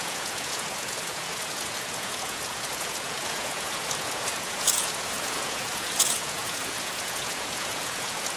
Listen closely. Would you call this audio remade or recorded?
remade